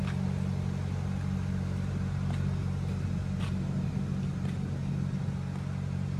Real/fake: real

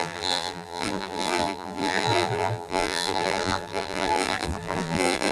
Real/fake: fake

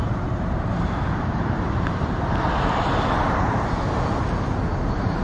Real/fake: fake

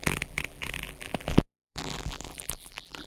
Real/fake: fake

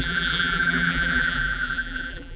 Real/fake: fake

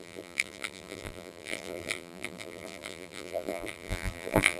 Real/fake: fake